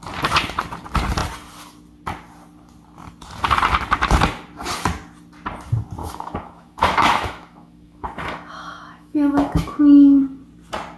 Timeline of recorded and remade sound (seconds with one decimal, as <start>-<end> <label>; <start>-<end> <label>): 0.0-6.0 recorded; 6.0-10.2 remade; 10.2-11.0 recorded